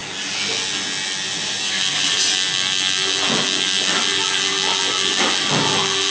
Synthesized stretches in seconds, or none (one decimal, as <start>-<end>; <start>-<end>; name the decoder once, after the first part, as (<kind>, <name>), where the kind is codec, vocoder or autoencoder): 1.4-2.2 (vocoder, BigVGAN v2)